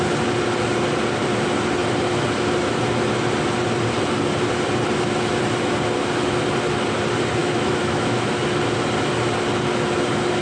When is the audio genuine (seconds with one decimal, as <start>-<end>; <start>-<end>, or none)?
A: 0.0-7.4; 8.3-10.4